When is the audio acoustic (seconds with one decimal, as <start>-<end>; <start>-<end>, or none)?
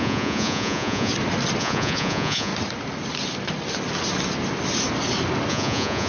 1.1-1.6; 2.5-5.5